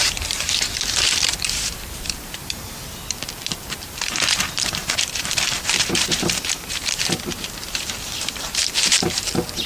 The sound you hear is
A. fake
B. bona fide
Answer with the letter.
A